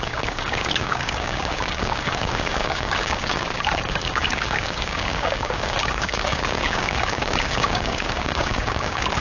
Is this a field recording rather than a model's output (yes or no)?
no